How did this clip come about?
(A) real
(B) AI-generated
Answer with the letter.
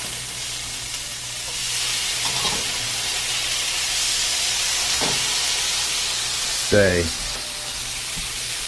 A